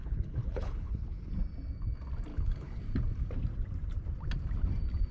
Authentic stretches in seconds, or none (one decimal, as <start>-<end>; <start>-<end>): 1.3-2.3; 2.8-5.1